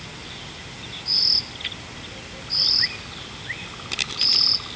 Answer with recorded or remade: recorded